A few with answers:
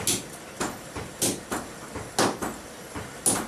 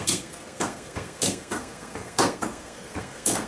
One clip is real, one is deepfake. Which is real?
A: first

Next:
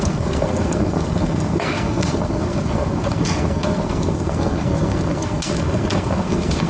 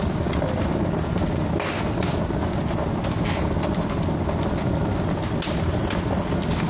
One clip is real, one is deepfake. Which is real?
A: second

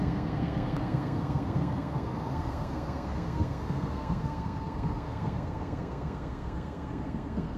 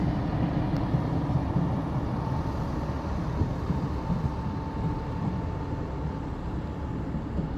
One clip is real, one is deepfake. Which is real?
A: second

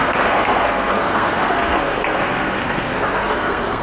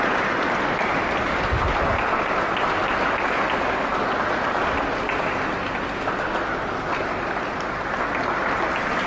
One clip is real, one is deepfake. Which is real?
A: second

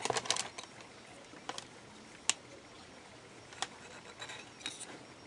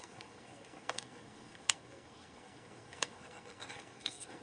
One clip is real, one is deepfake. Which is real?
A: first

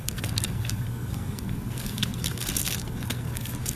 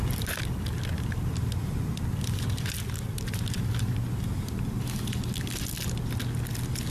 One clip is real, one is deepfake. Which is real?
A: second